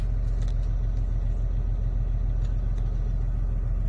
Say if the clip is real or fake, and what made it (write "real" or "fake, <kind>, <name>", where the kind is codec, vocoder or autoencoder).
real